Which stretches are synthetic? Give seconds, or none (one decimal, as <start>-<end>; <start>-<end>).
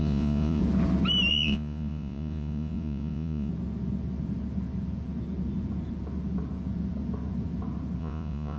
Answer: 0.0-0.6; 1.3-3.5; 8.0-8.6